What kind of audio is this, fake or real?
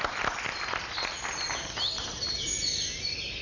real